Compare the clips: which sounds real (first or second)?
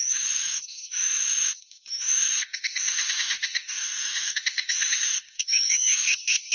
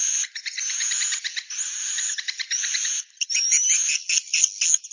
second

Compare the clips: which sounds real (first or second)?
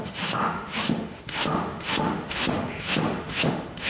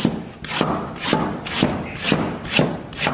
second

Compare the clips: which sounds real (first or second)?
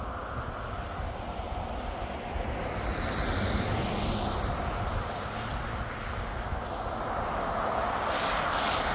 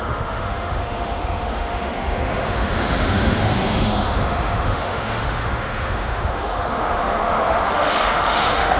first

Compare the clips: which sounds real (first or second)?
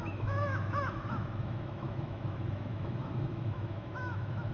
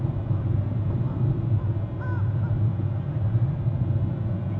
second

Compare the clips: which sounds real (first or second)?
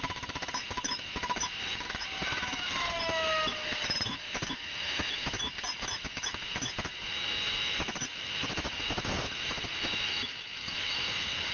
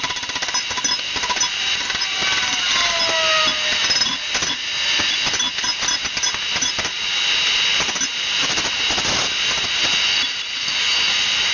second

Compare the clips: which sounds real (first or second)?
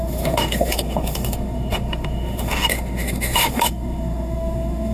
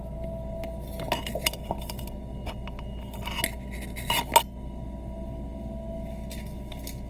second